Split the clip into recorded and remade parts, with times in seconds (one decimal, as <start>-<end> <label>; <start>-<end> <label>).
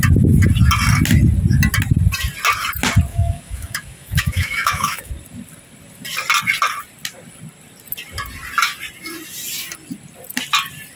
0.0-3.1 recorded; 3.1-5.1 remade; 5.1-11.0 recorded